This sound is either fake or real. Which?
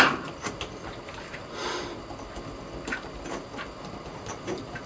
real